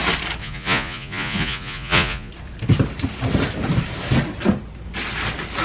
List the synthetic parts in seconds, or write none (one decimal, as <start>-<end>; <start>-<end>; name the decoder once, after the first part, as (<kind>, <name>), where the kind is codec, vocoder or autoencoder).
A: 0.4-2.3 (vocoder, Vocos)